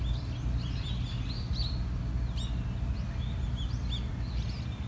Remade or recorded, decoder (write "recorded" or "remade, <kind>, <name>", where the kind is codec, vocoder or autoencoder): recorded